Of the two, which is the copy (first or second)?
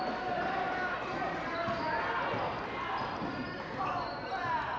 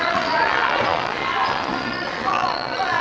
second